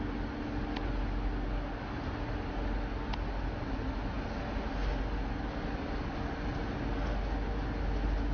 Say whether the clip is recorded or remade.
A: recorded